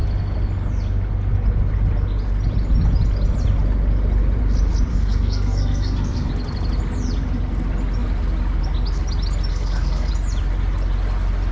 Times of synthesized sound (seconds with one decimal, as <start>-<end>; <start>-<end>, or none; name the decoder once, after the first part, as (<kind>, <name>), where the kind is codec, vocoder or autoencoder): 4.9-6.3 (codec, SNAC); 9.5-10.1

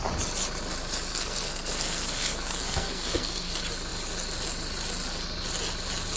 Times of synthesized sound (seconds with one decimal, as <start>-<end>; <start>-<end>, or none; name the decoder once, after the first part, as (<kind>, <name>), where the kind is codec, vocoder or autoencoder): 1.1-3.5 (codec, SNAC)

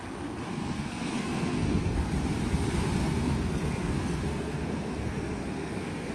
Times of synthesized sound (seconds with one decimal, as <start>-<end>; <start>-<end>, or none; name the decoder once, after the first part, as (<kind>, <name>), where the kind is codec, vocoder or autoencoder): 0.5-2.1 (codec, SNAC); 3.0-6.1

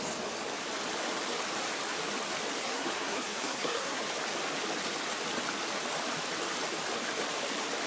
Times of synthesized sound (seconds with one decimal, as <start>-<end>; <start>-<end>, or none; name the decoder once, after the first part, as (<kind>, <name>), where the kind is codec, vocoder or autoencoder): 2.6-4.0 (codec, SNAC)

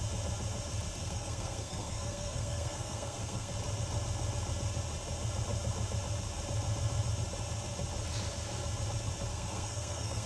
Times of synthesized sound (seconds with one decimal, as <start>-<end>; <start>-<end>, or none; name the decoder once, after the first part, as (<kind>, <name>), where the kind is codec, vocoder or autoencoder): 1.0-3.5 (codec, SNAC); 9.3-10.3

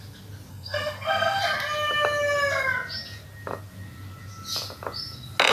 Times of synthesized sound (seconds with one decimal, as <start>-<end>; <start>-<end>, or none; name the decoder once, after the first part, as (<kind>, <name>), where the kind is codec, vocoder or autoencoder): 0.5-1.4 (codec, SNAC)

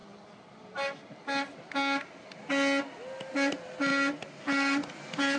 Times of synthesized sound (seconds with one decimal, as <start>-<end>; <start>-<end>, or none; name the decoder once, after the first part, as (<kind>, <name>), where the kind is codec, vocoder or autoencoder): none

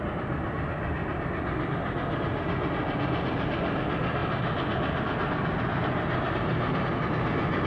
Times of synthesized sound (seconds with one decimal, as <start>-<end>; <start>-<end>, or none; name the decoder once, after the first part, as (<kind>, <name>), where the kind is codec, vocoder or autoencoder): none